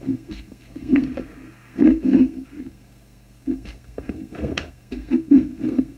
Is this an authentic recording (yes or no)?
no